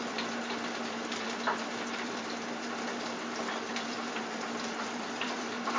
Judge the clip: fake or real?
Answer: fake